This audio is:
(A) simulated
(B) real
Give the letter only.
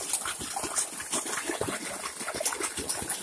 B